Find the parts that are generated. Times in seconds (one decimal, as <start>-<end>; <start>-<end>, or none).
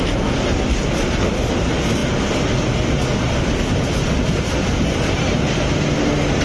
none